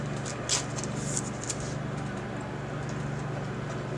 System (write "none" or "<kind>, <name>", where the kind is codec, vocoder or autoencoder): none